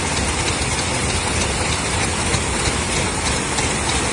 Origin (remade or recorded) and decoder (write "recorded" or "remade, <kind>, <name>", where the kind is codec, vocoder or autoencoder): recorded